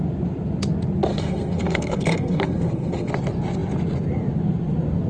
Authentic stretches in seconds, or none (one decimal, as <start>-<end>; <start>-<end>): 0.0-1.1; 3.1-5.1

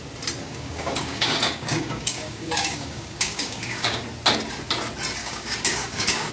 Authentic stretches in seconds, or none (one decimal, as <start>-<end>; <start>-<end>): 0.0-0.4; 4.0-5.2

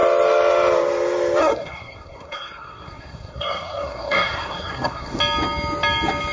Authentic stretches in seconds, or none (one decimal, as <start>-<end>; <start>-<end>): 0.0-1.4; 5.2-6.3

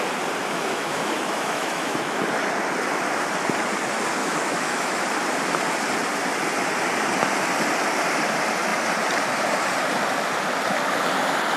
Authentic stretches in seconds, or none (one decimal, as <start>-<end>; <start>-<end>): 0.0-0.4; 2.2-4.2; 5.0-11.6

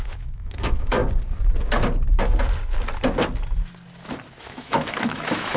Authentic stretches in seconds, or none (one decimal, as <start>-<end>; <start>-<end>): 1.0-4.4

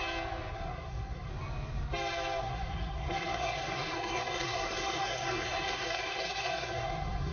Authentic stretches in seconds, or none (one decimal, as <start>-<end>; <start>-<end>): 0.0-0.5; 1.3-2.4

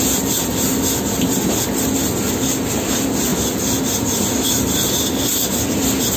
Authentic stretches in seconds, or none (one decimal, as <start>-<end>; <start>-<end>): 0.0-6.2

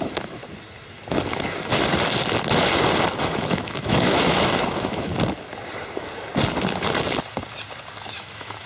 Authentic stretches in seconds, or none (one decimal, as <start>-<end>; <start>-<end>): 0.4-3.2; 5.1-8.0